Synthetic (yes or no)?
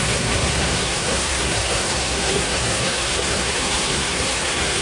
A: yes